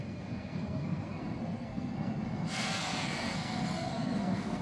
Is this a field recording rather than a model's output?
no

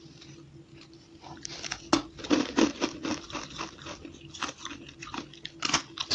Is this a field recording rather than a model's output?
yes